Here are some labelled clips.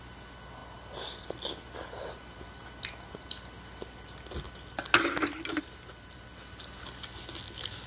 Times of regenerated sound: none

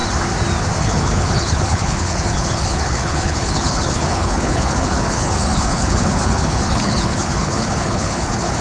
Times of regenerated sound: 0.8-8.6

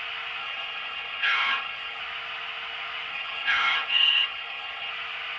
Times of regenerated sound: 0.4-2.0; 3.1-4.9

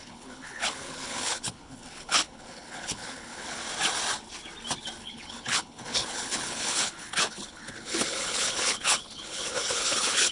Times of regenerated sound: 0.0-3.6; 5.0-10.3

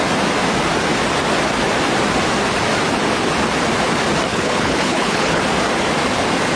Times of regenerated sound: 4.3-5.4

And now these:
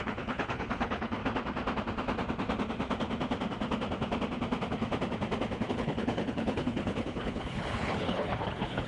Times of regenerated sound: 0.0-1.2; 5.7-8.9